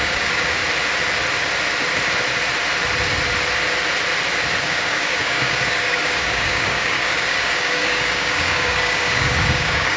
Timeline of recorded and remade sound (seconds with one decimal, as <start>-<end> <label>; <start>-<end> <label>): 0.0-0.6 remade; 0.6-4.6 recorded; 4.6-10.0 remade